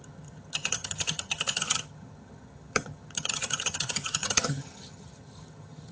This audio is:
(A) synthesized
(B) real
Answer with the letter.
A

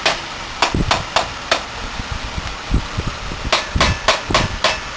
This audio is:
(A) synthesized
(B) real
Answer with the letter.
B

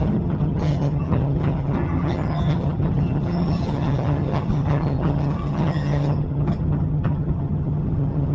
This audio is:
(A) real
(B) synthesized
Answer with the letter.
B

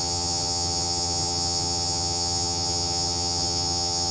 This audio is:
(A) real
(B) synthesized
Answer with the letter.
B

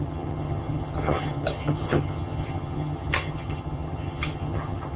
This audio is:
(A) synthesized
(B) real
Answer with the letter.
A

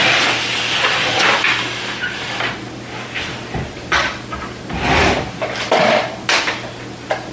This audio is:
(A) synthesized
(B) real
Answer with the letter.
B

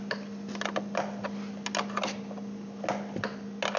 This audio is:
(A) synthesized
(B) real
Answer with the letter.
B